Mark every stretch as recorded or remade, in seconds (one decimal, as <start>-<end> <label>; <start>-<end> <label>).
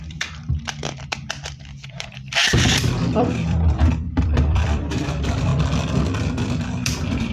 0.0-5.5 remade; 5.5-6.0 recorded; 6.0-7.3 remade